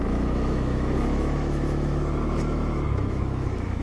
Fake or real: fake